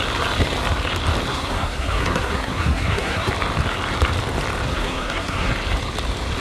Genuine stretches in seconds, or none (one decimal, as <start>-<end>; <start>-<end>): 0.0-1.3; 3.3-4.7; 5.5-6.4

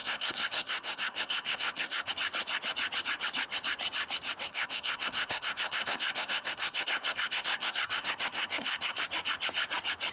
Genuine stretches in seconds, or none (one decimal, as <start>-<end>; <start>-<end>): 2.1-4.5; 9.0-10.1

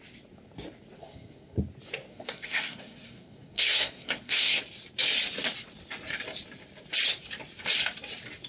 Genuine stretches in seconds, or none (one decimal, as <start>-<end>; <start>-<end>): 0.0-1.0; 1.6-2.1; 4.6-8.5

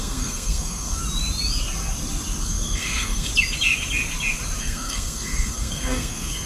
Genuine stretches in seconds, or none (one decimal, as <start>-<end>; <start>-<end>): 1.0-2.4; 3.3-4.6

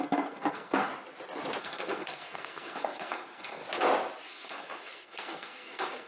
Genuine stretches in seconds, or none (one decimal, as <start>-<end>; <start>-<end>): 0.9-1.6; 3.6-4.3